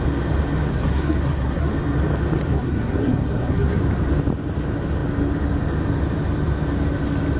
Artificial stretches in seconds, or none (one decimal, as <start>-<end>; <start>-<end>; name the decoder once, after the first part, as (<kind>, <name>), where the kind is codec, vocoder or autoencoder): 0.7-1.7 (codec, SNAC); 2.5-3.8